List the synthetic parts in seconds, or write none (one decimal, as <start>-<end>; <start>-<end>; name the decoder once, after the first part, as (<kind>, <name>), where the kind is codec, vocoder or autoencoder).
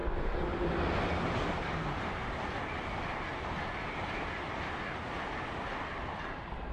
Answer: none